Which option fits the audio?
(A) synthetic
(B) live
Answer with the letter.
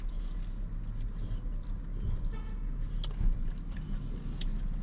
B